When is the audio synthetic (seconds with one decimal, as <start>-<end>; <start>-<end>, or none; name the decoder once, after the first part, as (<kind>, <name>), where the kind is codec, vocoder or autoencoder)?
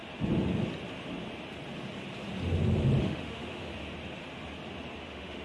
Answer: 3.0-3.7 (autoencoder, DAC-VAE); 5.0-5.4